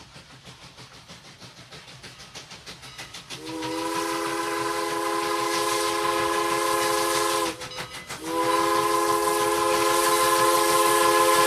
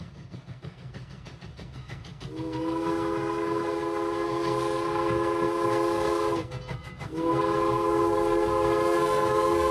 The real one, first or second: first